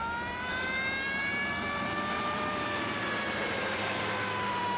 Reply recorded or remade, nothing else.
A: remade